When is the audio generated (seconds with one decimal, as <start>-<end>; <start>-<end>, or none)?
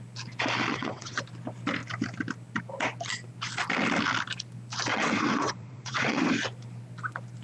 0.7-1.2; 4.9-6.2